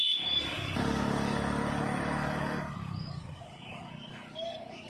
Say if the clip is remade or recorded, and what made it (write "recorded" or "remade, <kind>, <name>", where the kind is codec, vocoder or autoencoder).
remade, codec, DAC